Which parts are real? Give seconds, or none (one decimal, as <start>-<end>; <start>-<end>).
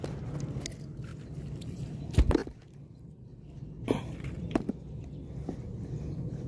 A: 0.0-1.1; 2.0-2.4; 5.7-6.5